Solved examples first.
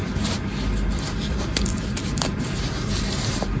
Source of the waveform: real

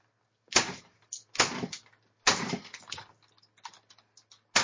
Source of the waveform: real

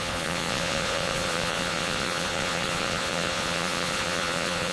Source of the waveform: fake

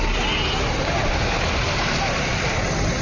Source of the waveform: real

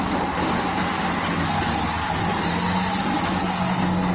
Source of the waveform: real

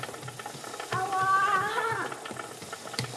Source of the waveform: real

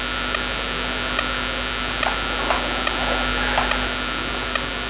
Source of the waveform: real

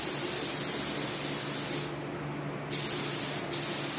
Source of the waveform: real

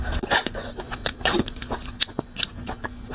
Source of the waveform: fake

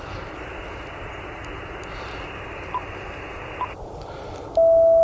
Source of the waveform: real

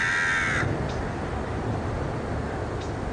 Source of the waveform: real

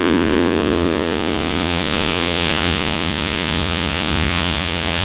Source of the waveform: fake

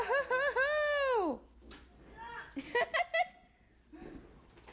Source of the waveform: real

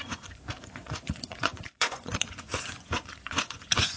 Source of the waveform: fake